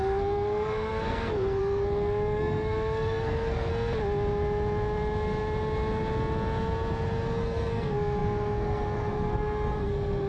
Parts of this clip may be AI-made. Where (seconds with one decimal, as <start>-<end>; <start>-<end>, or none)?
0.0-3.7; 7.4-10.3